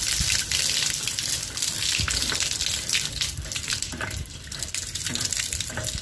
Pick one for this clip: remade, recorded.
remade